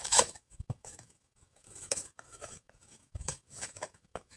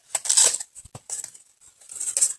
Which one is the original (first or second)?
second